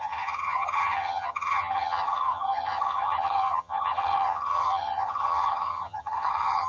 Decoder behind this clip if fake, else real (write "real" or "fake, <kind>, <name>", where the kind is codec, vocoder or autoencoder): fake, vocoder, HiFi-GAN